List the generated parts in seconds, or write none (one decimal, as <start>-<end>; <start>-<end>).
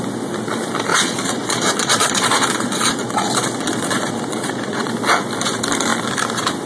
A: 0.9-4.9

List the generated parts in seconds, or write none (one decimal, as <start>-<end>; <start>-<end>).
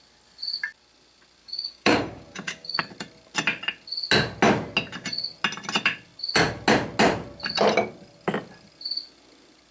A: 1.4-2.8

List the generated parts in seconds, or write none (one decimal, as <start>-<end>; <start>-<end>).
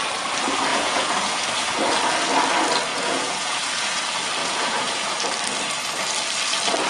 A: 0.7-1.8; 2.9-4.0; 4.4-5.2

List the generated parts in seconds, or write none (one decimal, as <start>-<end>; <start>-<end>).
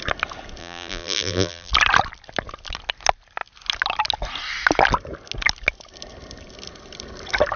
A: 0.6-1.7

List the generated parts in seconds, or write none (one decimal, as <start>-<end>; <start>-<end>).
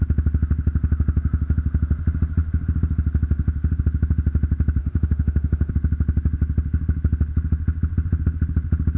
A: 4.8-5.7